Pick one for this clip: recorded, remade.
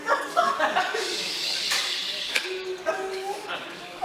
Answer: remade